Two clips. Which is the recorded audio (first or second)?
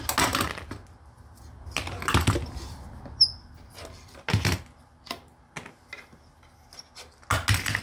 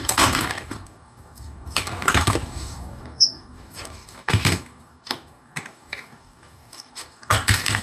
first